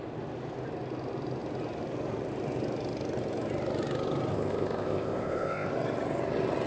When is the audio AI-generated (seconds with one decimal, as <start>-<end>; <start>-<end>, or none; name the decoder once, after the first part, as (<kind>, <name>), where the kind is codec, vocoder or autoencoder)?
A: 4.3-5.7 (codec, ZipCodec)